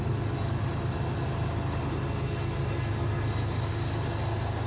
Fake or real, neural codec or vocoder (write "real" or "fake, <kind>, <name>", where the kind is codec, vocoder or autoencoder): real